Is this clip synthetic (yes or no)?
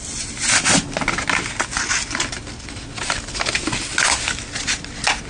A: no